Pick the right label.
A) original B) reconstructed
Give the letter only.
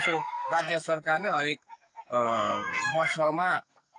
B